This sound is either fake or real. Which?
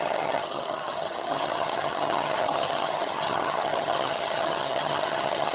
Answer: fake